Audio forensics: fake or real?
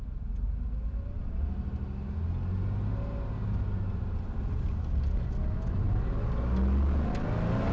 real